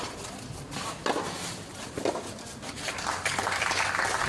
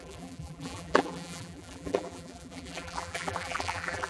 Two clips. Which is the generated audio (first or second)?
second